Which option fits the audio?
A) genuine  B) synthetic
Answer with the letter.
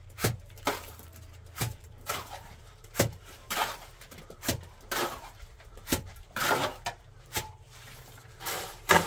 B